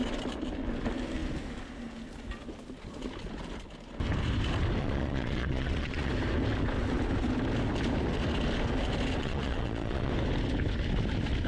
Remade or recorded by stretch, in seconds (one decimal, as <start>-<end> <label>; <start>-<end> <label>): 0.0-4.8 recorded; 4.8-6.1 remade; 6.1-9.2 recorded; 9.2-10.1 remade; 10.1-11.5 recorded

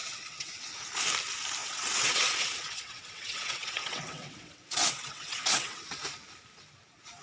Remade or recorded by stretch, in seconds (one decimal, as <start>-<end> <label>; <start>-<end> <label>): 0.0-0.7 remade; 0.7-1.6 recorded; 1.6-5.8 remade; 5.8-7.2 recorded

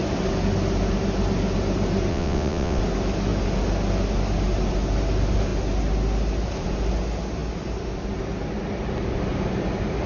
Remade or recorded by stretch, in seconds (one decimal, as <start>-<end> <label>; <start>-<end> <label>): 0.0-2.1 recorded; 2.1-2.8 remade; 2.8-10.1 recorded